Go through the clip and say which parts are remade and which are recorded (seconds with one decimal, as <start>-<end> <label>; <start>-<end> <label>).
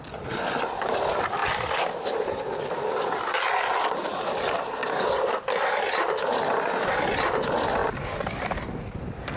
0.0-9.4 recorded